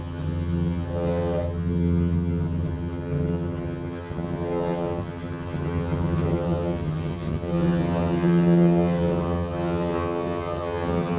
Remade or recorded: remade